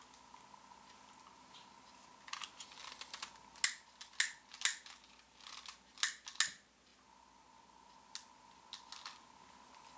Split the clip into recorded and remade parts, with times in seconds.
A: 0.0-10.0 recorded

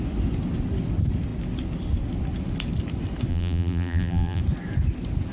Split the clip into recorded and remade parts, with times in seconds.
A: 0.0-3.3 recorded; 3.3-4.4 remade; 4.4-5.3 recorded

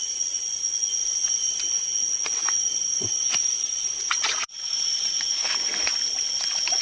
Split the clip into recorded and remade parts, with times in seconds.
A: 0.0-1.0 recorded; 1.0-1.6 remade; 1.6-2.4 recorded; 2.4-5.3 remade; 5.3-6.8 recorded